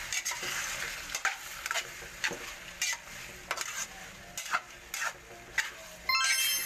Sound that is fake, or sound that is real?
real